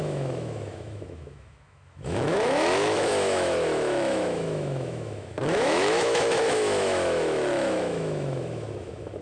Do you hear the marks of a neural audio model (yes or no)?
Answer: yes